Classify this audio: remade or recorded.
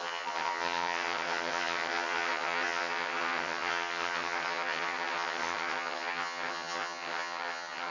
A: remade